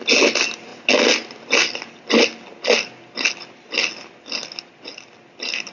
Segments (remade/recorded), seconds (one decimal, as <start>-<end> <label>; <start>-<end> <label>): 0.0-5.7 recorded